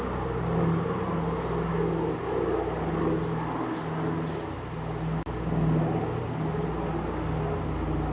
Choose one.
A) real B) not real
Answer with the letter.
A